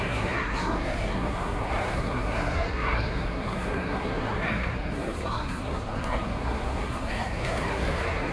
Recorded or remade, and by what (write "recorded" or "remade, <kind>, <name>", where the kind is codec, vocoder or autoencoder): remade, codec, SNAC